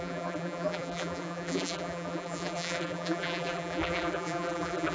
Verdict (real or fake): fake